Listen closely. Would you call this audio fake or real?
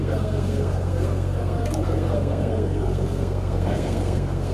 fake